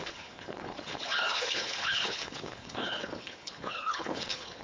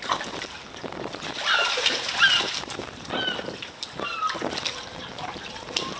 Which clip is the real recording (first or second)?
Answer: second